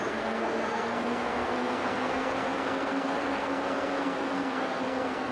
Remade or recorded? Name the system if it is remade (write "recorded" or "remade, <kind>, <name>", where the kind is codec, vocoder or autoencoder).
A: remade, codec, SNAC